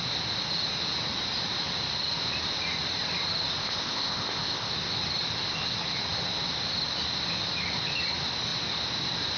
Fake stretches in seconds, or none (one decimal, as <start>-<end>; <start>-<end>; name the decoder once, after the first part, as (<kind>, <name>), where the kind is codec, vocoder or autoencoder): 3.6-4.7 (codec, ZipCodec)